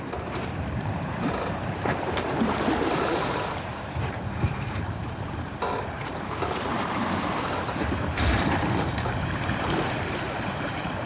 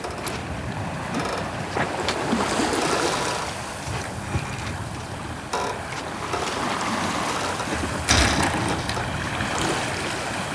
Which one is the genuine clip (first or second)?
second